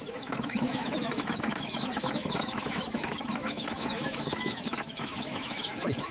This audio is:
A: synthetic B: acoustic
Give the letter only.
A